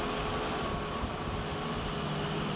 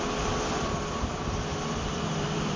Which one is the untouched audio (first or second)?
first